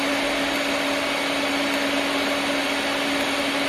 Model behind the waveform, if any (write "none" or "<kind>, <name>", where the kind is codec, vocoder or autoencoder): none